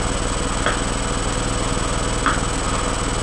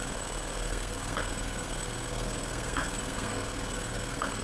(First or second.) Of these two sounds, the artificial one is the second